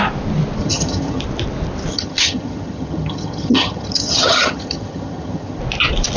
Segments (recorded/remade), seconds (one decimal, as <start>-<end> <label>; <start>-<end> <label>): 0.0-0.6 recorded; 0.6-1.2 remade; 1.2-1.9 recorded; 1.9-5.6 remade; 5.6-6.2 recorded